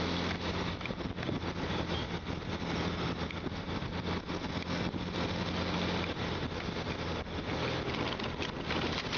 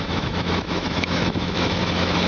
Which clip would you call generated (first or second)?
second